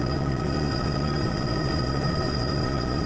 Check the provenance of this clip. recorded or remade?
remade